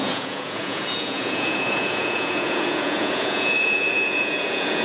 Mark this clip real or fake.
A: fake